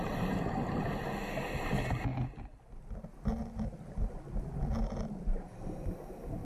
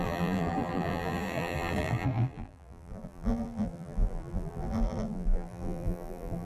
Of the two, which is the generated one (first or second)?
second